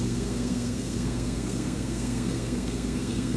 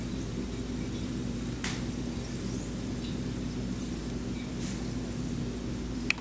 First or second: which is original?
second